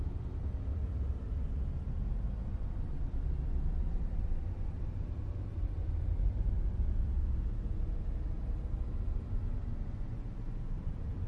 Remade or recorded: recorded